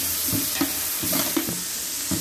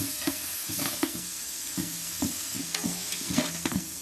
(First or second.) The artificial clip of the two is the second